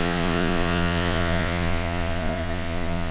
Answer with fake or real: fake